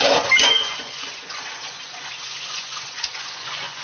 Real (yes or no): no